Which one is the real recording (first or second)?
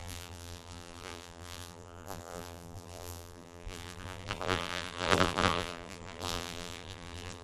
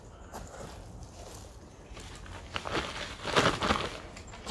second